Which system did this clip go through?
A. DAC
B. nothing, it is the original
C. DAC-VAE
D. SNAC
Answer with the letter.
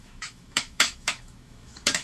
C